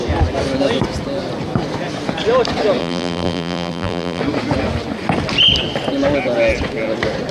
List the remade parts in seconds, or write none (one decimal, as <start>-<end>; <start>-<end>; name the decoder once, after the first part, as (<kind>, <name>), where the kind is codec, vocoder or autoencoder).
2.8-4.2 (vocoder, BigVGAN v2)